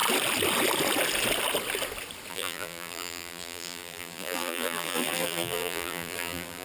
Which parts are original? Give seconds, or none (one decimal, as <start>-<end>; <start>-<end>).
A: 0.0-2.3